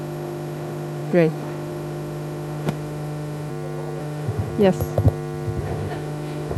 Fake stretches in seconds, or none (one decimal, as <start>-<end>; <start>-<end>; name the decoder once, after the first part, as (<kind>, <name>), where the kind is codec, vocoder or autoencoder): 0.0-3.5 (autoencoder, DAC-VAE); 4.0-4.5; 5.6-6.6